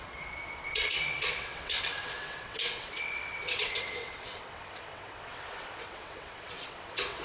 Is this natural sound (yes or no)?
no